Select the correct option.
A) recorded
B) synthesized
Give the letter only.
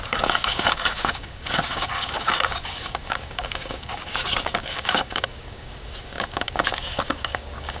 B